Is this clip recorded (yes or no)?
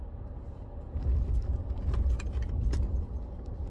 yes